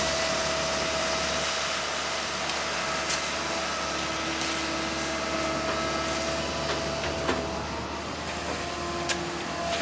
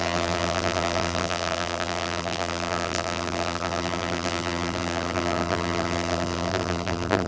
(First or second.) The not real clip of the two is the second